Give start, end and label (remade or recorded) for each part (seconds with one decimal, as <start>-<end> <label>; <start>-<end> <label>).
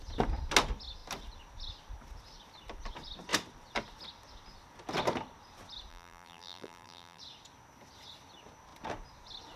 0.0-5.9 recorded; 5.9-7.2 remade; 7.2-9.6 recorded